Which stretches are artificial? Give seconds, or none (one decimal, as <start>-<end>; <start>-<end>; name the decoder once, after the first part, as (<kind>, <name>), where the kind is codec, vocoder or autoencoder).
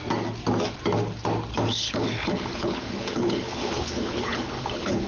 1.7-5.1 (codec, HILCodec)